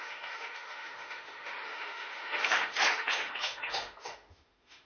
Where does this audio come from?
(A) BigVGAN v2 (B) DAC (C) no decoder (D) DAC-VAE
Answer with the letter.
D